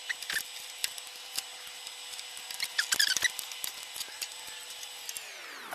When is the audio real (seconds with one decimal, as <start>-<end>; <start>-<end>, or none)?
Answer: 0.0-5.7